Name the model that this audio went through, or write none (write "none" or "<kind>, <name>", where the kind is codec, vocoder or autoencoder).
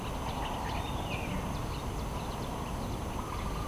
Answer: none